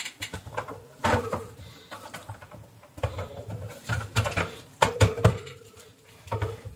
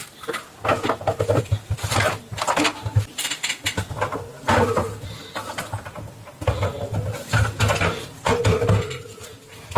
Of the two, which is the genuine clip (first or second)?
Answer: second